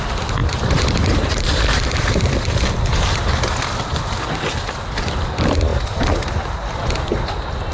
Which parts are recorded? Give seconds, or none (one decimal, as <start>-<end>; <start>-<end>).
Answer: 0.0-0.4; 2.0-5.7; 6.3-7.7